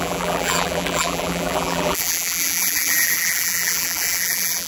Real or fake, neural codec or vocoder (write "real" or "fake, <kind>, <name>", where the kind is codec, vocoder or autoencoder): fake, vocoder, BigVGAN v2